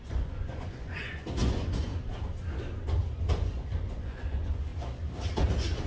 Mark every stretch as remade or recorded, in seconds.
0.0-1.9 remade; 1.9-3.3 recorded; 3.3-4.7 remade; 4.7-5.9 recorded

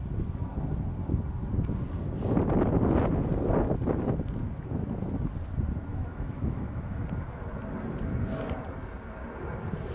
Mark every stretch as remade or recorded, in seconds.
0.0-5.9 recorded; 5.9-7.0 remade; 7.0-9.9 recorded

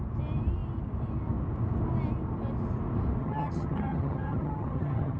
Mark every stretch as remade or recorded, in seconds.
0.0-3.2 recorded; 3.2-5.2 remade

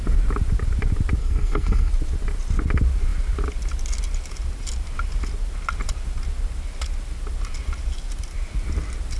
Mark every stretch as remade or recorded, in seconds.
0.0-1.2 recorded; 1.2-1.9 remade; 1.9-9.2 recorded

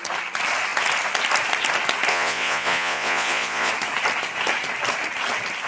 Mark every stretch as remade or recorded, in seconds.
0.0-2.1 recorded; 2.1-3.7 remade; 3.7-5.7 recorded

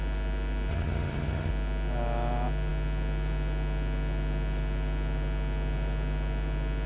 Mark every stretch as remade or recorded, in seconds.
0.0-0.7 recorded; 0.7-1.5 remade; 1.5-6.9 recorded

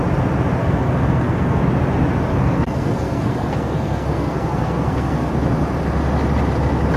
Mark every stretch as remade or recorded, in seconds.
0.0-0.6 recorded; 0.6-1.6 remade; 1.6-2.3 recorded; 2.3-5.3 remade; 5.3-7.0 recorded